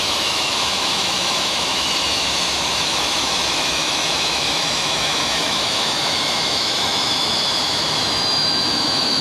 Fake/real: fake